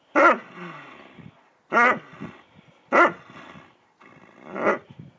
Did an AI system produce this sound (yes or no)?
no